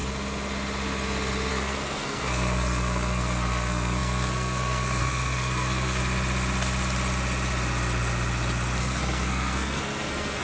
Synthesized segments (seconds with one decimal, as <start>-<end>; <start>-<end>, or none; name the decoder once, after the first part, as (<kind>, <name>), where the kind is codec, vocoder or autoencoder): 1.5-6.0 (codec, SNAC); 8.8-10.4